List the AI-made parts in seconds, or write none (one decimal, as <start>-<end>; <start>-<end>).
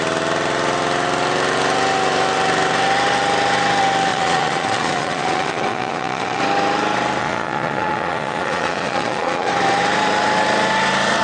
4.1-6.4; 7.2-9.5